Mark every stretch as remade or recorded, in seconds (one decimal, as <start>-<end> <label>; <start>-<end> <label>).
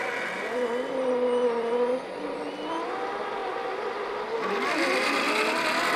0.0-6.0 recorded